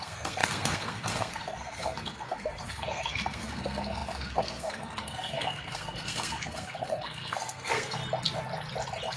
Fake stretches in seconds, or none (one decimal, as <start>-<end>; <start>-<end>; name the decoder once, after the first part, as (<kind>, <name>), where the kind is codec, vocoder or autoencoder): 0.0-8.0 (codec, SNAC)